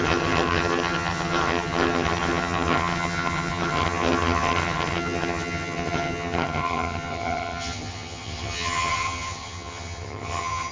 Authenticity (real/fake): fake